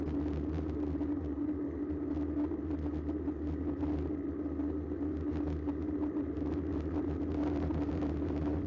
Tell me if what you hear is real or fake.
real